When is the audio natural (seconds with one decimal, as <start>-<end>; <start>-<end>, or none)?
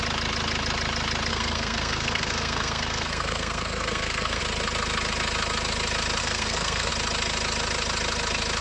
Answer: 0.0-1.3; 4.4-6.2; 6.9-8.6